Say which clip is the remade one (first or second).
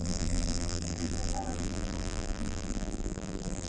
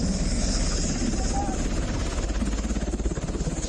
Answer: first